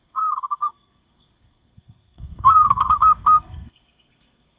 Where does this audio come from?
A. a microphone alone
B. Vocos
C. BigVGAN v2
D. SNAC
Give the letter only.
D